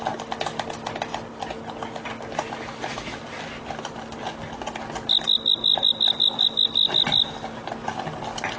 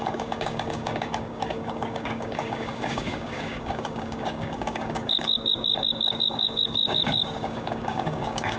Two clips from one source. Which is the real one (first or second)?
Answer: first